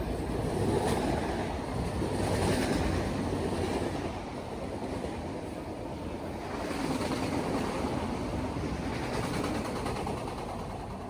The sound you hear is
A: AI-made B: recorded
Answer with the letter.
B